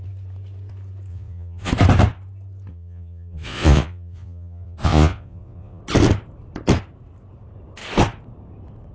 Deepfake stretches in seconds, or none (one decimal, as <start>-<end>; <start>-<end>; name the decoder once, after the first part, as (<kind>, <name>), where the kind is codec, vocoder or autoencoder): 1.1-1.7 (vocoder, Vocos); 2.7-5.8